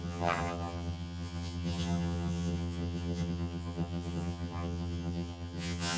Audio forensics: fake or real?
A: fake